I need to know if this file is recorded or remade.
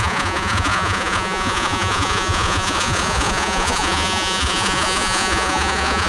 remade